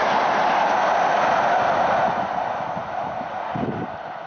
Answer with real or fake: real